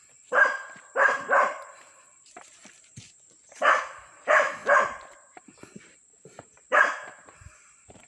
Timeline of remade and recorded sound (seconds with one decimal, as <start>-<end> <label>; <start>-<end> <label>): 0.0-4.6 remade; 4.6-5.4 recorded; 5.4-8.1 remade

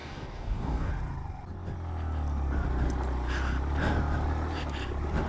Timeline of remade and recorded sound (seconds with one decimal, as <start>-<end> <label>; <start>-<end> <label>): 0.0-0.9 remade; 0.9-5.3 recorded

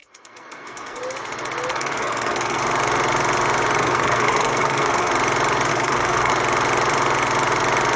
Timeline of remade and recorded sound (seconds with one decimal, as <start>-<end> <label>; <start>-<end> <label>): 0.0-1.0 remade; 1.0-1.7 recorded; 1.7-2.6 remade; 2.6-3.8 recorded; 3.8-5.1 remade; 5.1-5.7 recorded; 5.7-6.3 remade; 6.3-8.0 recorded

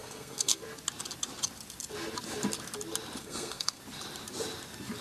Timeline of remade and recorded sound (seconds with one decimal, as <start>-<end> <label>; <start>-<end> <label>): 0.0-0.6 remade; 0.6-3.2 recorded; 3.2-3.8 remade; 3.8-5.0 recorded

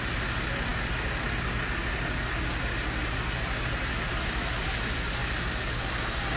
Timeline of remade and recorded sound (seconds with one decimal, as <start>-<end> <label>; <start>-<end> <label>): 0.0-6.4 recorded

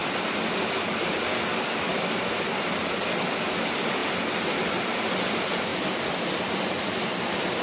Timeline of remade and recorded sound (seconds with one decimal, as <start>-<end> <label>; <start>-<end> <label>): 0.0-1.9 recorded; 1.9-2.8 remade; 2.8-7.6 recorded

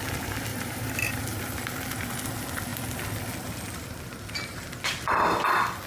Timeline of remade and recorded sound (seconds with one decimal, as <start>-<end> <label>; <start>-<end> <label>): 0.0-0.5 recorded; 0.5-1.2 remade; 1.2-5.9 recorded